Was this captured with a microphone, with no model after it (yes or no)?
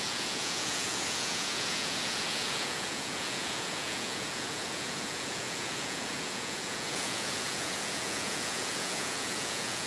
no